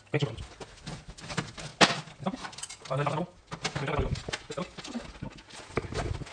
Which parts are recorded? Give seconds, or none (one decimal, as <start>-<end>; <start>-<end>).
0.0-6.3